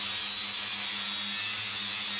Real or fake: real